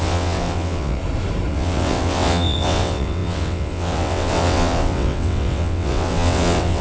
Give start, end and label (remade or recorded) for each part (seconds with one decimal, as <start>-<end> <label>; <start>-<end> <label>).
0.0-1.0 remade; 1.0-1.5 recorded; 1.5-6.8 remade